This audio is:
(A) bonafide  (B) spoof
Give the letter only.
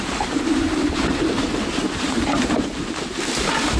B